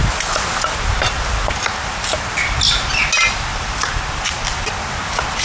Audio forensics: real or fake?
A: real